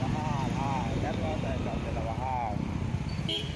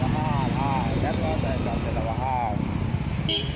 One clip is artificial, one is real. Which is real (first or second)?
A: second